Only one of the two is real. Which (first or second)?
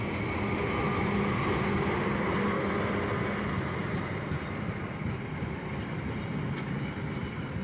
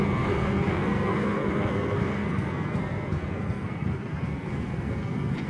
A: first